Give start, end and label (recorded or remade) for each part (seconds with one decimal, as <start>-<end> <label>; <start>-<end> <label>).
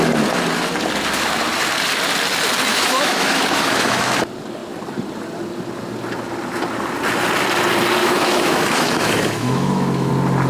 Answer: 0.0-2.7 recorded; 2.7-4.1 remade; 4.1-8.0 recorded; 8.0-10.1 remade; 10.1-10.5 recorded